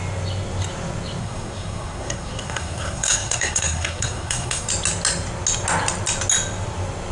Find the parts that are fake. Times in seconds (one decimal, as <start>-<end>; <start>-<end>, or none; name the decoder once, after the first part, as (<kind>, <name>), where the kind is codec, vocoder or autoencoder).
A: 1.2-4.7 (codec, SNAC)